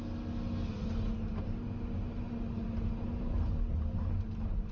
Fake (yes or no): no